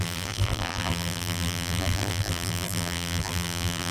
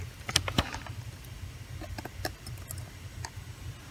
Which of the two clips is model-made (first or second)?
first